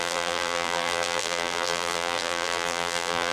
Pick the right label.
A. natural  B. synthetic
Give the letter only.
B